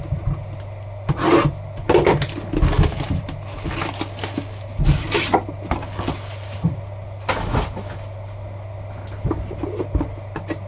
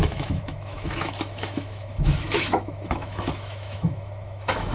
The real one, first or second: first